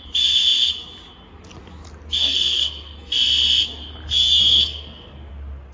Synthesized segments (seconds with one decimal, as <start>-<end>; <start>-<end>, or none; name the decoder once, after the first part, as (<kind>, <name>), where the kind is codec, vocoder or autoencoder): 2.2-3.1 (codec, SNAC); 4.4-5.3